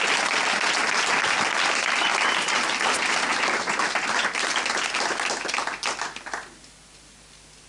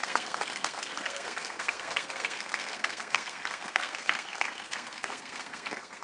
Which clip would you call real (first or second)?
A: first